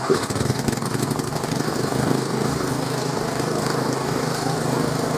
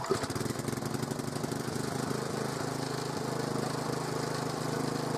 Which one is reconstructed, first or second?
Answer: first